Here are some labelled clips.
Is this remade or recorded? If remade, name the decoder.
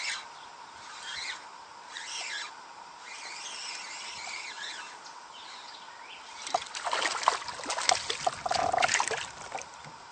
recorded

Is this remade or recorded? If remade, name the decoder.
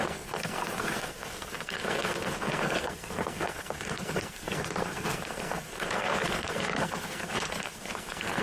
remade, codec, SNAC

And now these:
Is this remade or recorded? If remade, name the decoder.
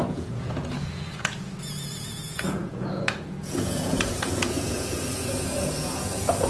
remade, vocoder, Vocos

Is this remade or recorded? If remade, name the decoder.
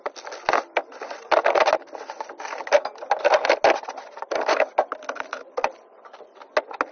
recorded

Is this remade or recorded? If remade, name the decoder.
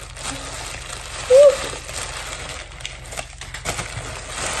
recorded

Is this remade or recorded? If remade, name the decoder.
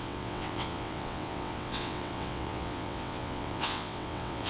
remade, vocoder, WaveNeXt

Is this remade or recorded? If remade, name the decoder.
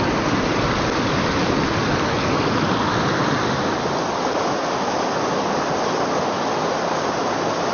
recorded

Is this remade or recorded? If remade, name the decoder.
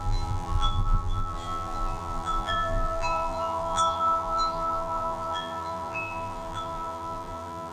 remade, vocoder, BigVGAN v2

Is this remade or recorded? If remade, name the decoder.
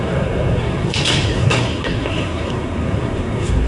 remade, codec, SNAC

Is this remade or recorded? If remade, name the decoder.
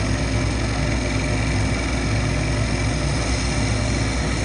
recorded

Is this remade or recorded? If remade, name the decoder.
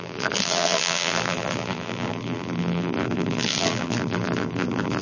remade, vocoder, BigVGAN v2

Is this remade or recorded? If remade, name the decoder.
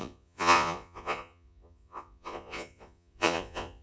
remade, vocoder, Vocos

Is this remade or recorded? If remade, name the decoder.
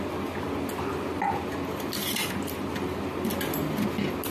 recorded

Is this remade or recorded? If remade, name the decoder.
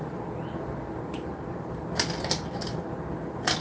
recorded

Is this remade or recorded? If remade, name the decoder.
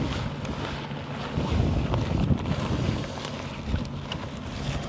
recorded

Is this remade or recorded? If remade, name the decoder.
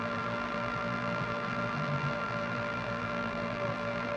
remade, vocoder, BigVGAN v2